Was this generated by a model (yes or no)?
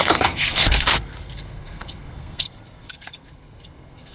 yes